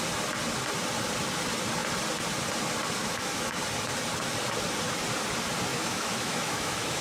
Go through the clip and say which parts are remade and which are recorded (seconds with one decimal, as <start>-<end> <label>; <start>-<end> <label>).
0.0-3.0 recorded; 3.0-3.6 remade; 3.6-5.7 recorded; 5.7-7.0 remade